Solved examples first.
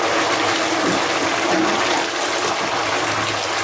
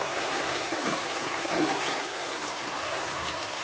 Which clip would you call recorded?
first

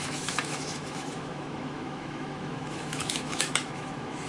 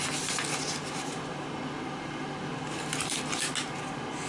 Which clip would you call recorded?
second